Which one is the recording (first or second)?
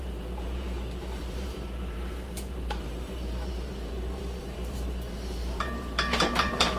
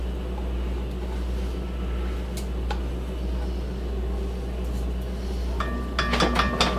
second